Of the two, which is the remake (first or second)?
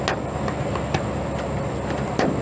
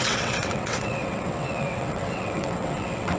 second